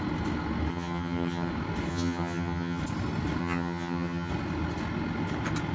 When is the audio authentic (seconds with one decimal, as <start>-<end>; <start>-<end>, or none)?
0.0-0.7; 1.5-1.9; 2.8-3.4; 4.3-5.7

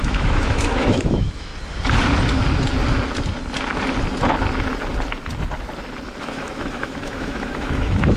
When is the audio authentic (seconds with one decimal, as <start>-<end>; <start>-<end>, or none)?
1.5-6.2

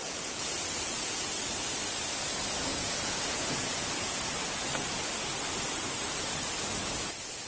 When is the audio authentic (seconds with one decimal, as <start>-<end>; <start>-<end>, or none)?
1.3-2.7; 4.2-7.5

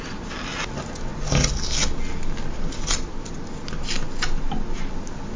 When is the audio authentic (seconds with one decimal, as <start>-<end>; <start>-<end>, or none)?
0.0-5.4